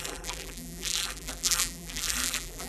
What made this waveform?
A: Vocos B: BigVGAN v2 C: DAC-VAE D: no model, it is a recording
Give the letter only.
B